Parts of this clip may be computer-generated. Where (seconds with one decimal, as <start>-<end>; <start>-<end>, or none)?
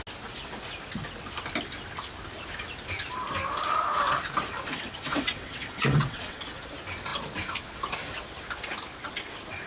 4.7-6.4